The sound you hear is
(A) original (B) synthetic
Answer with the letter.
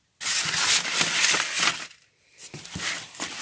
A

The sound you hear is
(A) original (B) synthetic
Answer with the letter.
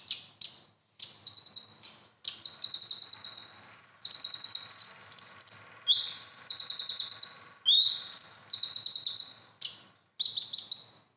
A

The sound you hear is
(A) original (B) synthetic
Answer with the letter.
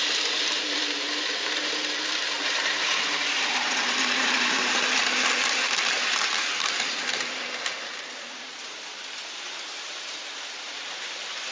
B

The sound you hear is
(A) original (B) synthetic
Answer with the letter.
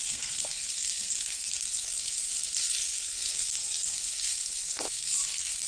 B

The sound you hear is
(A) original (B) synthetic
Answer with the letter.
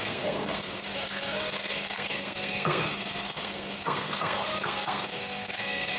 B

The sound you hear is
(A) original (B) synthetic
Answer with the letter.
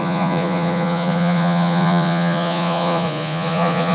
B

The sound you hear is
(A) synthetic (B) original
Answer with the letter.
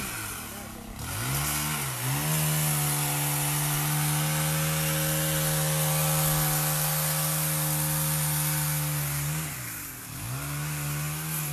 B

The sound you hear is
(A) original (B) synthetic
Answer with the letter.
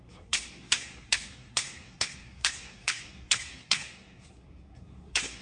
B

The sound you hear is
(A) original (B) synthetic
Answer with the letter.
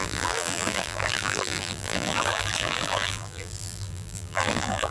B